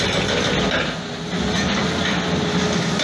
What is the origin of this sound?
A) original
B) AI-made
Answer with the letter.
A